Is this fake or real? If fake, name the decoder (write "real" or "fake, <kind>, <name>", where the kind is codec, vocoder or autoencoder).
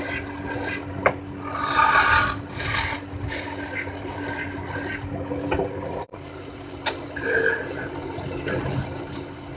real